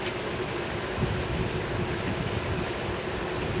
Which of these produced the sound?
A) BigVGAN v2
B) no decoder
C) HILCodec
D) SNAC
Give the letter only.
B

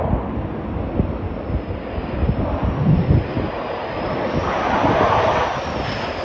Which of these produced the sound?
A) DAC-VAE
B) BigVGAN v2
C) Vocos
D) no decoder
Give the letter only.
D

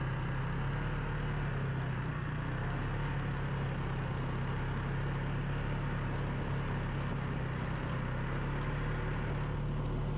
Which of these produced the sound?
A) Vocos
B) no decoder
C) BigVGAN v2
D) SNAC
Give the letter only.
B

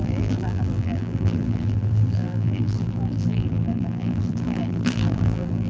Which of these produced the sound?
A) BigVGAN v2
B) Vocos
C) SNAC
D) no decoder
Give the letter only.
A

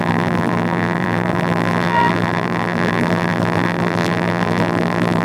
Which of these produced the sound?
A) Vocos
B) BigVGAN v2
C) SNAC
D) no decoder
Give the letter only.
B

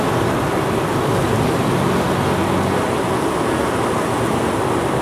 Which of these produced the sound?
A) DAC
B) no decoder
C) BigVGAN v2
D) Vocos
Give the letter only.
B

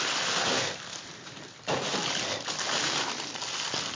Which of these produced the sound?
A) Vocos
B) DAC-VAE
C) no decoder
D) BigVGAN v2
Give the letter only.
D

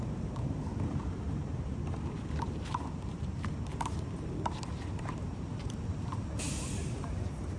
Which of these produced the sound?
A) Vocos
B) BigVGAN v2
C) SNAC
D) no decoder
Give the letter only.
B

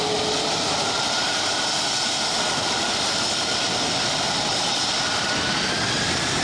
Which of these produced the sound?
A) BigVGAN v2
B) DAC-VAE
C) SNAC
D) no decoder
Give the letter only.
A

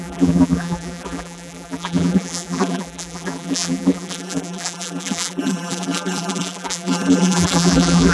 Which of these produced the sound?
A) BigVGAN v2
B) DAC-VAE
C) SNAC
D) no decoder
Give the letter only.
A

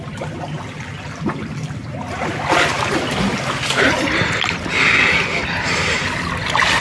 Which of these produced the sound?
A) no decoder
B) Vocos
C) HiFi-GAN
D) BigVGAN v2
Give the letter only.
A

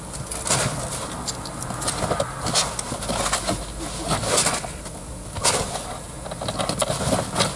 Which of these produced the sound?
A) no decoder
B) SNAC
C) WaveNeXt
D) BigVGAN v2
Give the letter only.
A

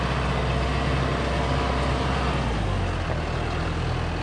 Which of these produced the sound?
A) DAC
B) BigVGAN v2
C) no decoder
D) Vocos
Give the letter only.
C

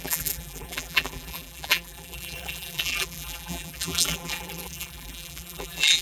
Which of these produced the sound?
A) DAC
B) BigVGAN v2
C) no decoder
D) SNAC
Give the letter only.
B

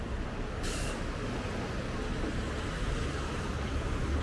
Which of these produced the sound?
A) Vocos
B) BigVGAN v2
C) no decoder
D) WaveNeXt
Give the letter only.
C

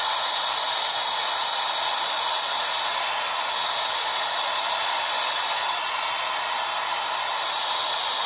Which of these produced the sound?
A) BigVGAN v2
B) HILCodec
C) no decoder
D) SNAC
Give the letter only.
C